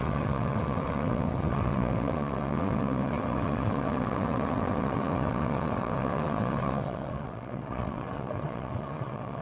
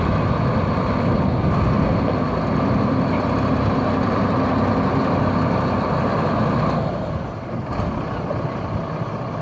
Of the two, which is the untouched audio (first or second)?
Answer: second